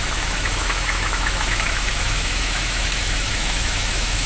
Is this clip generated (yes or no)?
yes